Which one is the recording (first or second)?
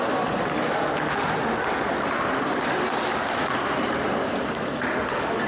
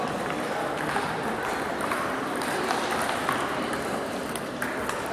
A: first